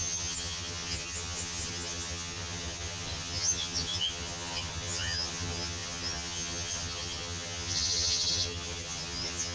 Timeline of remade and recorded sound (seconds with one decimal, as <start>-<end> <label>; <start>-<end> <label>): 0.0-9.5 remade